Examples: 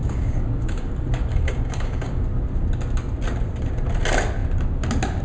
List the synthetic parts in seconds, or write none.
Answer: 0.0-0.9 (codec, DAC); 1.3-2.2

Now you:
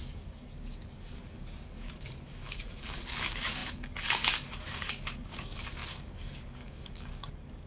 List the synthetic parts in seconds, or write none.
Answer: 0.0-7.7 (codec, DAC)

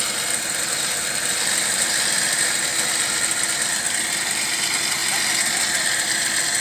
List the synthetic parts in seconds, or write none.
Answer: none

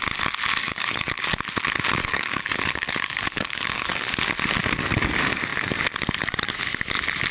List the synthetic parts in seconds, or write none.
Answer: 0.6-1.2 (codec, DAC); 2.0-4.1

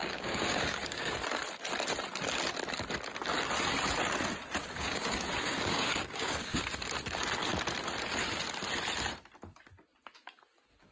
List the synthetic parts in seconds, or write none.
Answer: 0.0-1.1 (codec, DAC); 4.6-6.6

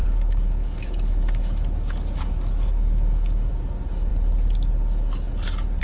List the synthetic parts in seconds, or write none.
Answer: 0.0-3.5 (codec, DAC)

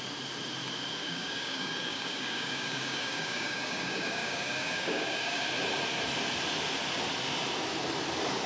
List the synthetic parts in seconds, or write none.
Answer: 1.0-5.4 (codec, DAC)

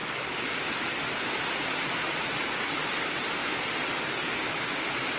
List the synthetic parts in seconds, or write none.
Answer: 0.0-0.7 (codec, DAC)